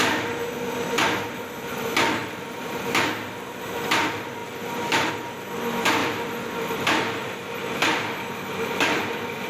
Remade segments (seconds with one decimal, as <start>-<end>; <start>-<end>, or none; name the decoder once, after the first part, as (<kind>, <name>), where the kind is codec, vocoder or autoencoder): 2.2-2.8 (vocoder, BigVGAN v2); 4.4-5.1; 6.0-7.7